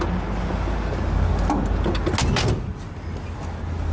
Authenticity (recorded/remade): recorded